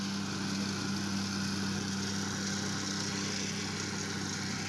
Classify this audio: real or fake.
real